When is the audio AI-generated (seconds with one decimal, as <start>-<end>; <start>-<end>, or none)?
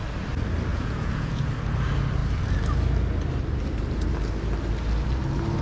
0.7-1.4